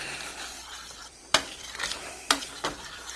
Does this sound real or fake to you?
fake